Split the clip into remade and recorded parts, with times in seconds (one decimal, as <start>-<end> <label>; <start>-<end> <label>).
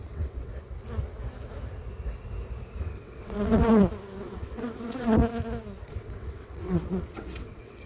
0.0-0.5 remade; 0.5-2.8 recorded; 2.8-3.6 remade; 3.6-4.2 recorded; 4.2-5.2 remade; 5.2-5.9 recorded; 5.9-7.9 remade